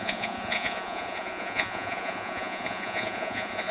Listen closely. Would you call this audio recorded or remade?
remade